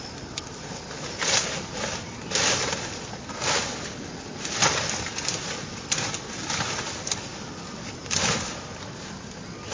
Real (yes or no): yes